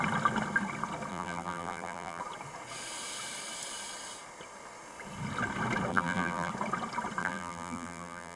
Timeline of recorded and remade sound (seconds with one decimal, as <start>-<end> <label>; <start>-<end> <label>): 0.0-1.1 recorded; 1.1-2.2 remade; 2.2-5.9 recorded; 5.9-6.5 remade; 6.5-7.2 recorded; 7.2-8.4 remade